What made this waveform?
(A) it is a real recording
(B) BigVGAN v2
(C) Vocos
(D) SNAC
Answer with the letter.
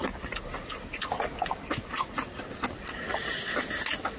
A